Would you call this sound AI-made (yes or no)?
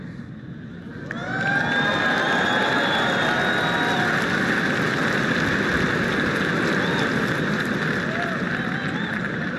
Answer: no